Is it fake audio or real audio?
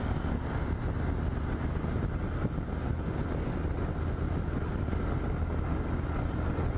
real